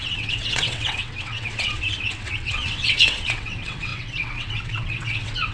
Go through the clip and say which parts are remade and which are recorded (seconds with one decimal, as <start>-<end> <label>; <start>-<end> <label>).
0.0-5.5 remade